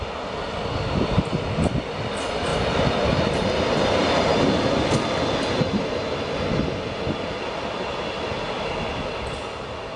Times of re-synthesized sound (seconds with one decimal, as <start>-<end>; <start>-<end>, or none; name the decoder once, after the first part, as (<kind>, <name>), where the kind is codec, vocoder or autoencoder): none